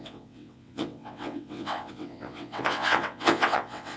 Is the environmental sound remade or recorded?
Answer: remade